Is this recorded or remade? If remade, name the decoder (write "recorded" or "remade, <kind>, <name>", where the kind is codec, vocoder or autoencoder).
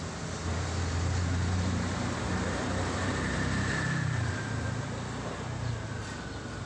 recorded